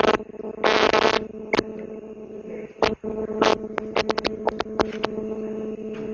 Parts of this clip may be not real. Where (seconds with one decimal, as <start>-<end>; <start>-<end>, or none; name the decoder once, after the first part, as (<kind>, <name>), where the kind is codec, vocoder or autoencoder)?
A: none